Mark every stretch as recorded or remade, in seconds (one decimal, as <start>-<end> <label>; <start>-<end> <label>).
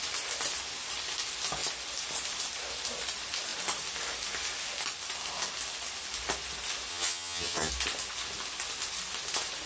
0.0-6.9 recorded; 6.9-7.7 remade; 7.7-9.7 recorded